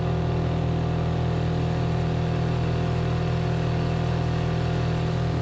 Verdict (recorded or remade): recorded